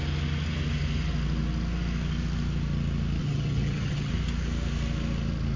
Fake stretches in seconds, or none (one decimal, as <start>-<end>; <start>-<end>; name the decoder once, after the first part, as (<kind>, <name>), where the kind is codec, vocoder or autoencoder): 3.2-4.1 (vocoder, HiFi-GAN)